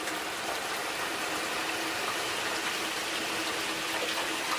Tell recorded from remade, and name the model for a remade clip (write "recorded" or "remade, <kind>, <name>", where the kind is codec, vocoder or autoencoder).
recorded